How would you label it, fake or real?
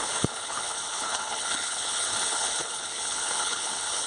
fake